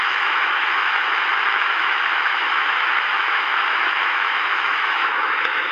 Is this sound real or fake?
fake